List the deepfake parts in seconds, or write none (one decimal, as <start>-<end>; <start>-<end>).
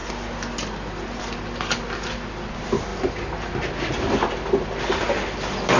none